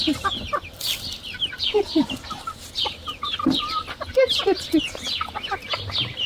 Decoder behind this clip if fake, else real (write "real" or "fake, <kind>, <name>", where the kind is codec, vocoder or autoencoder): real